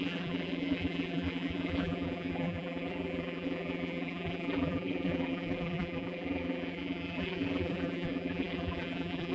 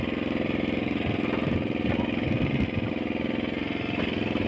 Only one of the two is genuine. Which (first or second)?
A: second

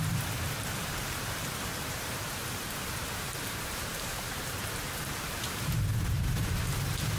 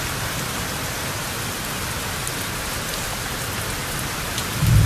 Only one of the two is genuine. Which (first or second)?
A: second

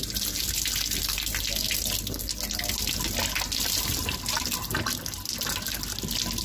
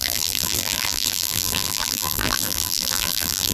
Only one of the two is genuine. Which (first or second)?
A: first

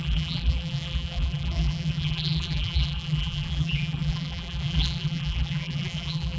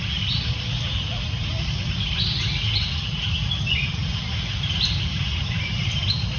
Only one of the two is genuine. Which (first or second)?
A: second